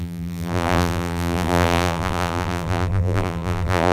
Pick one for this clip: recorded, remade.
remade